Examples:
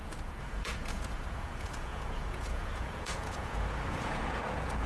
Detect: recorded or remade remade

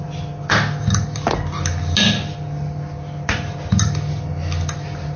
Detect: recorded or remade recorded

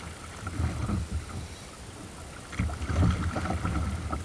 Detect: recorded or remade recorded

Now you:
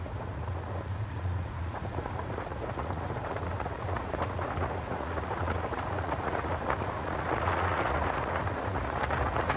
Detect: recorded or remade remade